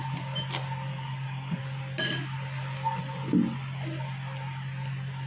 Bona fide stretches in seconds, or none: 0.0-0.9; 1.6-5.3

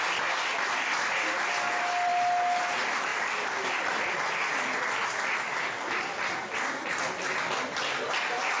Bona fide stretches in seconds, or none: 0.0-8.6

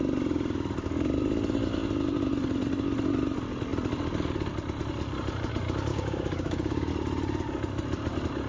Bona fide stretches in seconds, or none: 0.0-5.9; 6.9-8.5

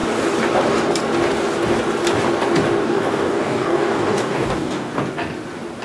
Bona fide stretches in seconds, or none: 0.0-2.8; 4.9-5.8

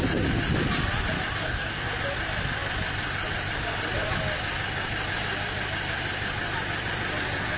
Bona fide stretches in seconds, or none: 0.0-1.4; 1.9-7.6

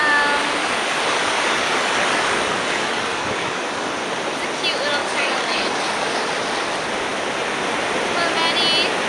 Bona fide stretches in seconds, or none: 0.0-0.6; 3.9-5.0; 6.3-9.1